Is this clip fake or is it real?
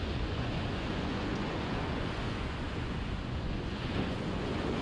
fake